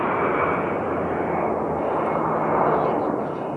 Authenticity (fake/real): real